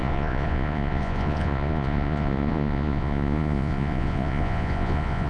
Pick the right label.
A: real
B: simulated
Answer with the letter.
B